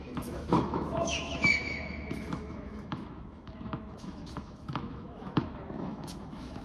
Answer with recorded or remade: remade